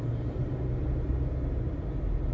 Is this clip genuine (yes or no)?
yes